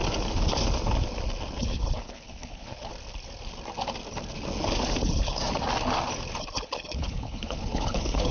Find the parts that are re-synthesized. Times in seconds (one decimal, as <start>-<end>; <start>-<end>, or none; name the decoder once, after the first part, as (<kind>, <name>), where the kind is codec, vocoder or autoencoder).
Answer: 1.6-2.9 (codec, HILCodec); 5.0-5.4; 6.4-8.3